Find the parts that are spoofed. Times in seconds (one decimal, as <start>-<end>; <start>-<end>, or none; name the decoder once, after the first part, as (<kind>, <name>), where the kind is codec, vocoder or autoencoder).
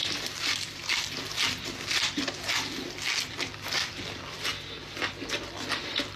0.0-4.5 (vocoder, BigVGAN v2); 5.3-6.2